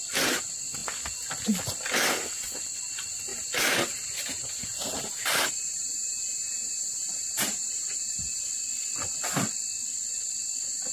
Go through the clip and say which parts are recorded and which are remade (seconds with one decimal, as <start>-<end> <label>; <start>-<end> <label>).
0.0-3.3 recorded; 3.3-8.5 remade; 8.5-10.9 recorded